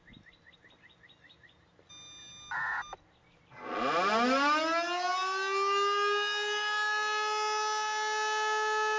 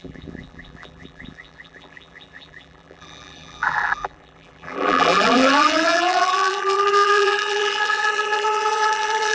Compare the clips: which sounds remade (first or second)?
second